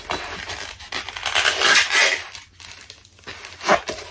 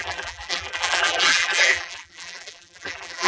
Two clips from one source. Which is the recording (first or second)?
first